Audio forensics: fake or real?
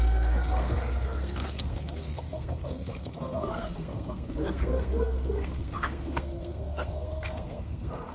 fake